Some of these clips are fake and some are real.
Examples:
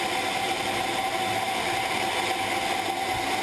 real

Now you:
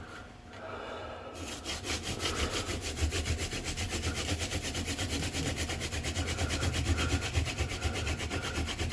real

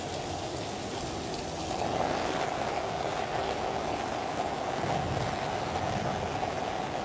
real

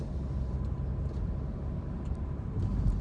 real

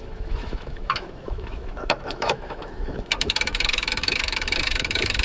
fake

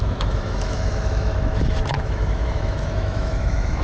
fake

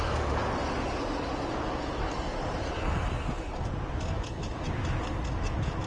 real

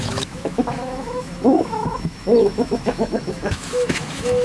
fake